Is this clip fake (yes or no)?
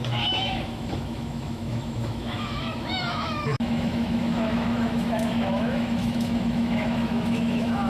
yes